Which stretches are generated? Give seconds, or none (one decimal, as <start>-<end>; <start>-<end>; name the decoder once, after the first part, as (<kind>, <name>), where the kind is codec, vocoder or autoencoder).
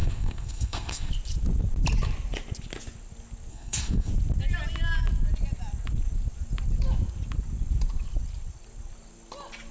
0.0-1.1 (codec, SNAC); 3.5-4.1